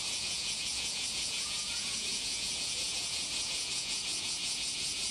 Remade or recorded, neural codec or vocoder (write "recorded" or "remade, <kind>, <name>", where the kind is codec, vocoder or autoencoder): remade, vocoder, Vocos